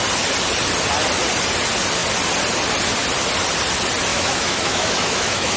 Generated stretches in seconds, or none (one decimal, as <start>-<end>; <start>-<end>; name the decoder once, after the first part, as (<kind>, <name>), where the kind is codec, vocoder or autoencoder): 4.1-5.6 (autoencoder, DAC-VAE)